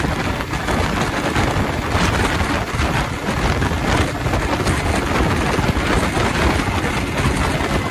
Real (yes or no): yes